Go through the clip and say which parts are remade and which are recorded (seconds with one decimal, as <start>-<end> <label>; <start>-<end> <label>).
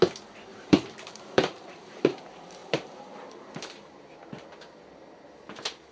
0.0-0.5 recorded; 0.5-2.2 remade; 2.2-2.6 recorded; 2.6-4.5 remade; 4.5-5.9 recorded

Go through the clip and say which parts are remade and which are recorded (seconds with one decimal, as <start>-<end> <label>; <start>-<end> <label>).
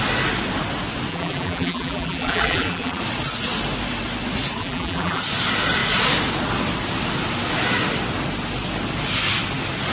0.0-1.1 recorded; 1.1-3.0 remade; 3.0-4.6 recorded; 4.6-5.2 remade; 5.2-9.9 recorded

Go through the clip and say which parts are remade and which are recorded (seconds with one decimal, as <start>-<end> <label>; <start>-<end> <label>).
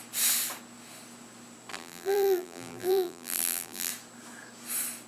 0.0-1.7 recorded; 1.7-3.9 remade; 3.9-5.1 recorded